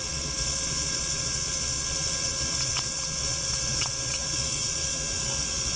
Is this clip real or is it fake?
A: fake